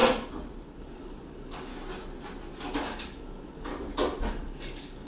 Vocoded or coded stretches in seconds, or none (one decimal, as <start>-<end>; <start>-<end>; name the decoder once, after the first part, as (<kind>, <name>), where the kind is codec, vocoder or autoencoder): 0.8-1.7 (codec, DAC); 2.8-3.7; 4.3-5.1